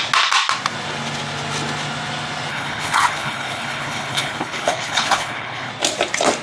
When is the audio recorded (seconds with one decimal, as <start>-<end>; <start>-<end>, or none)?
0.0-2.5; 5.7-6.4